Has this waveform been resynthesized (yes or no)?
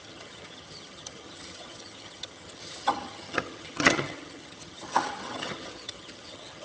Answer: yes